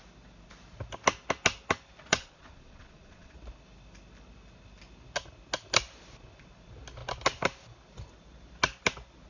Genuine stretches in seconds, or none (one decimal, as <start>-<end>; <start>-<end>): 0.0-2.1; 3.4-9.3